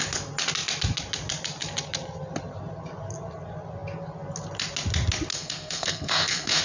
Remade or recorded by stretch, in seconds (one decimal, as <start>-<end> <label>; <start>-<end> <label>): 0.0-5.3 recorded; 5.3-6.6 remade